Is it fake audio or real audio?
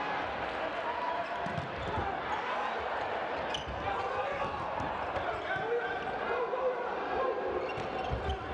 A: real